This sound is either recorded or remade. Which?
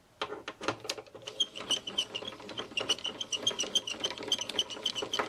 recorded